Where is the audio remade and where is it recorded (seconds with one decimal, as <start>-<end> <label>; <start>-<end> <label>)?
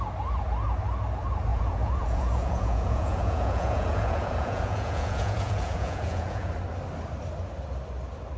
0.0-1.5 recorded; 1.5-6.5 remade; 6.5-8.4 recorded